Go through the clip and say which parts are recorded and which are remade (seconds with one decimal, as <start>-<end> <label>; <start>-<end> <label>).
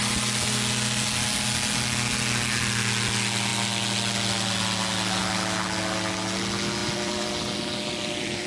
0.0-6.8 recorded; 6.8-8.5 remade